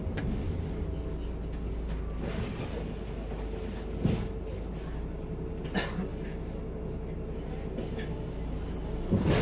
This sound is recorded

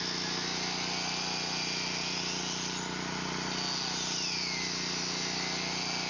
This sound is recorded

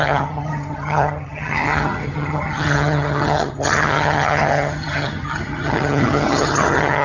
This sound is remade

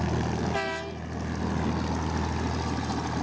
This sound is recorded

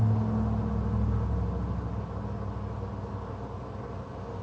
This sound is recorded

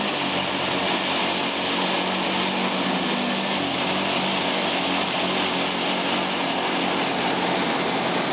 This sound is recorded